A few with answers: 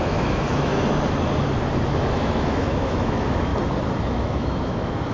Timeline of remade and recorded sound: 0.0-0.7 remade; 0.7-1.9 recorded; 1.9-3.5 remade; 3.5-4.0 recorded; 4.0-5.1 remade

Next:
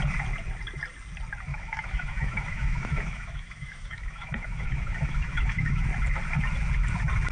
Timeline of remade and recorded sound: 0.0-1.5 recorded; 1.5-5.9 remade; 5.9-7.3 recorded

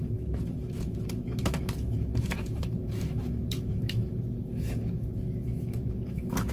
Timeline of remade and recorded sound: 0.0-6.5 remade

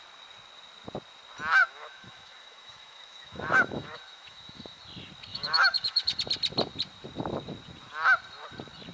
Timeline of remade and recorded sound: 0.0-1.6 recorded; 1.6-4.8 remade; 4.8-5.3 recorded; 5.3-6.2 remade; 6.2-8.9 recorded

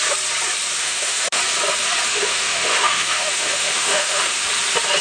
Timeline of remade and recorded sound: 0.0-0.8 recorded; 0.8-1.4 remade; 1.4-2.1 recorded; 2.1-4.3 remade; 4.3-5.0 recorded

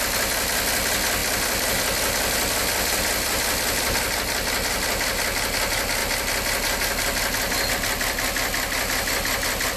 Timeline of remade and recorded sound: 0.0-9.8 recorded

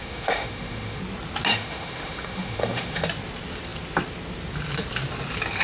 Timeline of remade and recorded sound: 0.0-1.0 remade; 1.0-1.5 recorded; 1.5-3.1 remade; 3.1-5.6 recorded